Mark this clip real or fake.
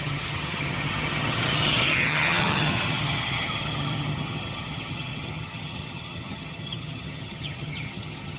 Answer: fake